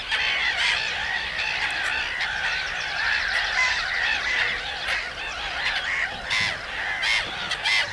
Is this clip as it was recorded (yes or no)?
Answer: yes